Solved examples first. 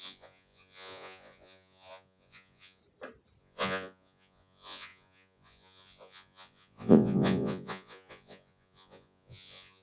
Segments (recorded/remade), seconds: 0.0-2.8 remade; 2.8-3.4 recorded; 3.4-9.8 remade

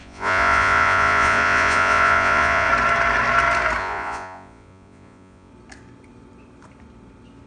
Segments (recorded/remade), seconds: 0.0-2.7 remade; 2.7-3.8 recorded; 3.8-5.5 remade; 5.5-7.5 recorded